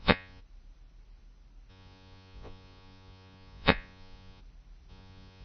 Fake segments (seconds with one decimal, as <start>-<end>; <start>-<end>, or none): 0.0-0.4; 1.7-4.4; 4.9-5.4